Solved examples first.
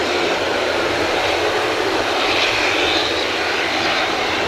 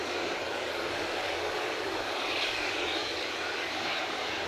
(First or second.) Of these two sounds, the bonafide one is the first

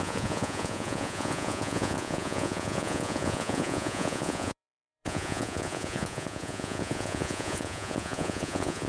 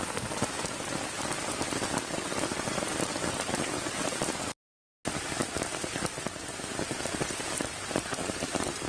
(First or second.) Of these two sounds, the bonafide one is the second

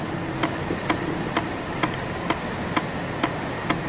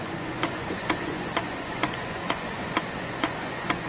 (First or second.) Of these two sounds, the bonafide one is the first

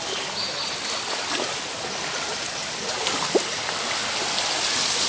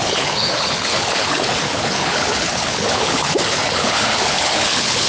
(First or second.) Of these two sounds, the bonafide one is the first